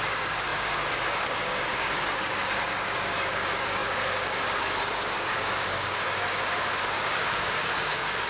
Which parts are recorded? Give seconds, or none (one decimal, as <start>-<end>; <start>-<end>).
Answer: none